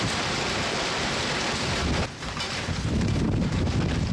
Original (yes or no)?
yes